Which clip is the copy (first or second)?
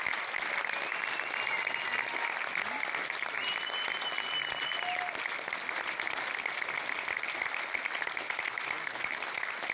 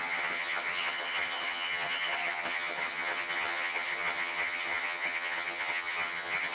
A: second